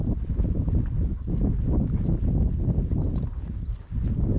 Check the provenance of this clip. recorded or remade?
recorded